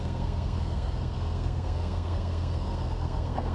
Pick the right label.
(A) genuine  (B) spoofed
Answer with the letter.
B